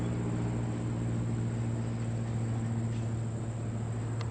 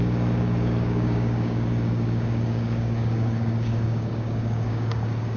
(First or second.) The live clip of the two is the first